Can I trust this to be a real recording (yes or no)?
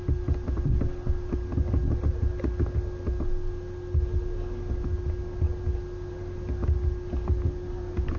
yes